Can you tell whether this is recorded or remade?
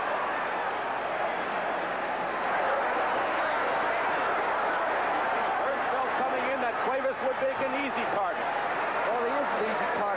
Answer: recorded